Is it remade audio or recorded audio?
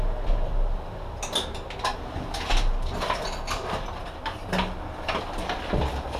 recorded